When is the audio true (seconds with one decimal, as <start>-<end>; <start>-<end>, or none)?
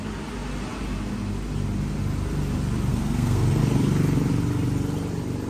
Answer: 0.0-2.9; 3.6-5.5